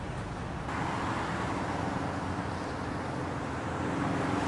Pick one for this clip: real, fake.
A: real